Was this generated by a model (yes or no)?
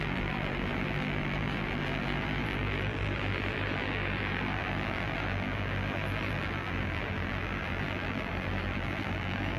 yes